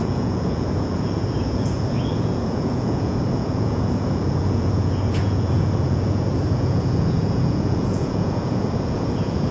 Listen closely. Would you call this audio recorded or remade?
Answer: remade